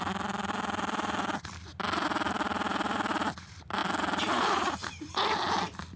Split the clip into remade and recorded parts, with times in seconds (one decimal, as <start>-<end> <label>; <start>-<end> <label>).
0.0-6.0 recorded